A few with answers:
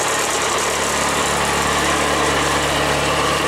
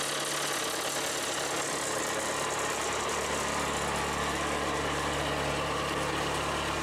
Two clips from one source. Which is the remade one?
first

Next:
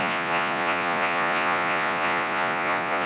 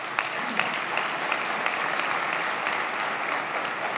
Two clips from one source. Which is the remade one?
first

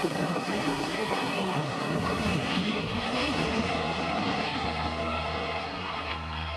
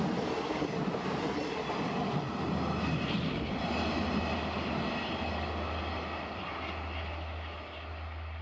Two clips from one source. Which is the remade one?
first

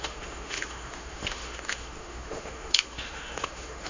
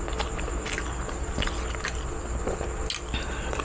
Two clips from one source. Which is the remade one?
first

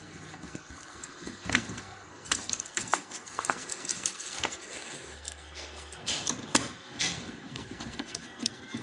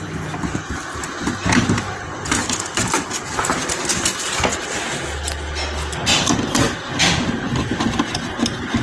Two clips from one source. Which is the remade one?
first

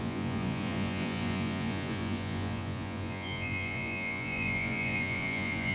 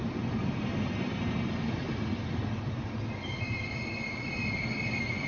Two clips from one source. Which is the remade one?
first